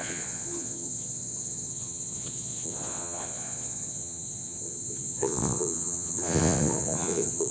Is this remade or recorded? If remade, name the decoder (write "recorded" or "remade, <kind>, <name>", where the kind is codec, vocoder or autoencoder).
remade, vocoder, Vocos